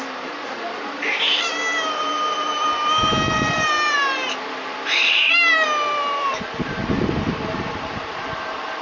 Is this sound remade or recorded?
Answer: remade